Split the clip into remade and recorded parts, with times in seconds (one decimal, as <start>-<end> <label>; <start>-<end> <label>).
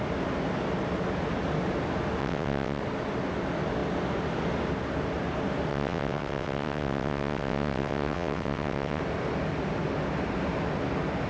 0.0-2.2 recorded; 2.2-2.8 remade; 2.8-5.7 recorded; 5.7-9.0 remade; 9.0-11.3 recorded